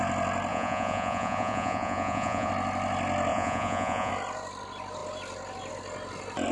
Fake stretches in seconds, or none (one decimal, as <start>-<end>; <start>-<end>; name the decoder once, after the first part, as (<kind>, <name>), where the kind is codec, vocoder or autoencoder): 0.5-2.5 (vocoder, Vocos); 3.3-4.1